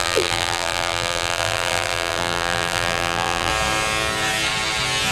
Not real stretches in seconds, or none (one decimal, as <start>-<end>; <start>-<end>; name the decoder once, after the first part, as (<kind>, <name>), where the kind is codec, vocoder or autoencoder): 0.0-3.5 (vocoder, BigVGAN v2)